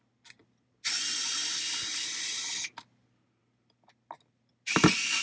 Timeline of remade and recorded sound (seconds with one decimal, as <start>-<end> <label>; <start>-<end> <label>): 0.0-5.2 recorded